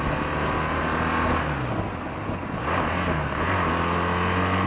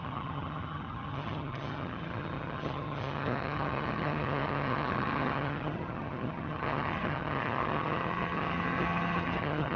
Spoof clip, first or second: second